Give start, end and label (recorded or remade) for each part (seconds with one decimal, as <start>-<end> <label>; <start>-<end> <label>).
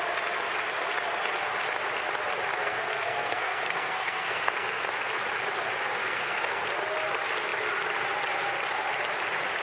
0.0-2.6 recorded; 2.6-4.9 remade; 4.9-6.0 recorded; 6.0-6.7 remade; 6.7-9.6 recorded